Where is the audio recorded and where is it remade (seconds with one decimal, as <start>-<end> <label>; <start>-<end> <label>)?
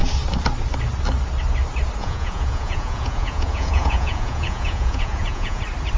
0.0-2.0 recorded; 2.0-5.6 remade; 5.6-6.0 recorded